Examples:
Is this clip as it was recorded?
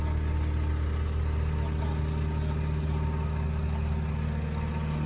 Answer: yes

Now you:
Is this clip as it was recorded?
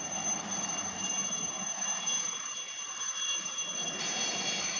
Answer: yes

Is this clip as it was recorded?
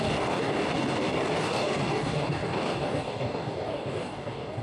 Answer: no